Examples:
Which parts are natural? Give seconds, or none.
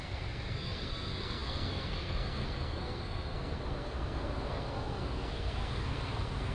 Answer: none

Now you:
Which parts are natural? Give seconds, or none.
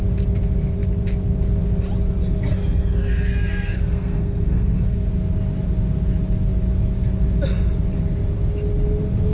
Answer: 0.0-2.5; 5.1-9.3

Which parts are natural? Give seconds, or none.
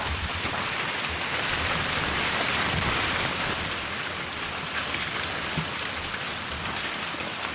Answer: 0.0-7.5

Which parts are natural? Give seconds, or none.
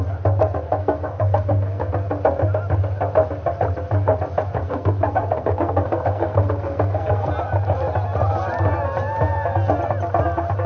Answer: 0.0-0.8; 1.9-4.6; 7.3-10.7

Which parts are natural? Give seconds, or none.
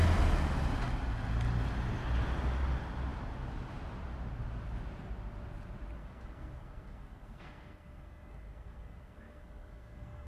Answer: 0.0-6.0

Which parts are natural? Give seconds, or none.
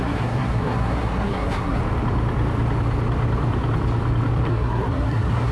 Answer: 1.8-4.5